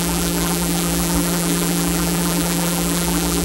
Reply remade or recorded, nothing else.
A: remade